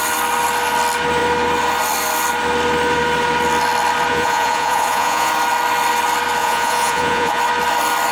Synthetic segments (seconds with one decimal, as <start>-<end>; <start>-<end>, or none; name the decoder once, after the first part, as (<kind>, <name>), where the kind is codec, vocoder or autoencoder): 4.1-5.3 (vocoder, Vocos); 6.4-7.4